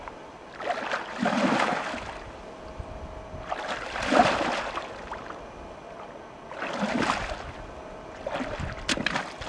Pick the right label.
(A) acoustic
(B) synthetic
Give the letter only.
A